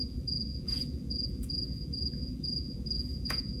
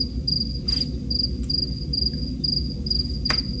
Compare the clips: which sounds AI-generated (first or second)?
first